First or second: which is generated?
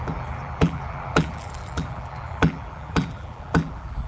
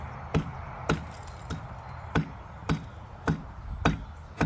first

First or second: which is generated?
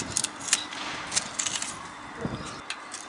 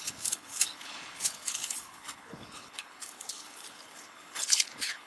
second